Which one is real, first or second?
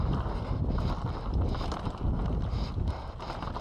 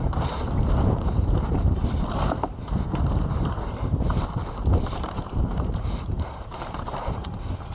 first